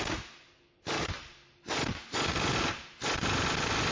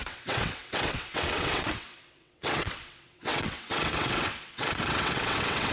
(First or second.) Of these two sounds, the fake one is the second